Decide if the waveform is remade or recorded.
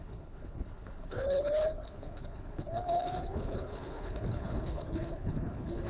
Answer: remade